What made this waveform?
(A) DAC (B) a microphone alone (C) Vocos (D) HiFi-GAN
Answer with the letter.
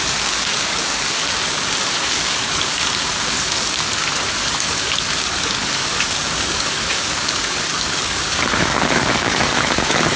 A